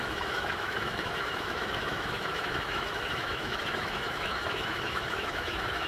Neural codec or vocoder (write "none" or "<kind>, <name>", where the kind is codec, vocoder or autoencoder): autoencoder, DAC-VAE